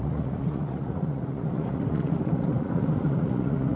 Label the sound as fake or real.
fake